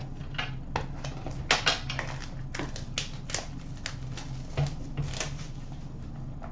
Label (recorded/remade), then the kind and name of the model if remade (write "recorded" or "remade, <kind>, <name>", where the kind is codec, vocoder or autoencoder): recorded